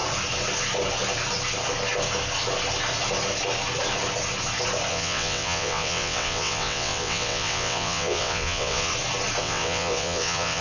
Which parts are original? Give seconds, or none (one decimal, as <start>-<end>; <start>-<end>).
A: 0.0-4.9; 8.9-9.4